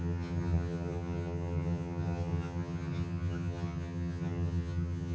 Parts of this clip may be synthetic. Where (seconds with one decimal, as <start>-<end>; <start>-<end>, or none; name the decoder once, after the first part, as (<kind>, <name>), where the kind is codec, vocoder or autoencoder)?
0.0-5.1 (vocoder, HiFi-GAN)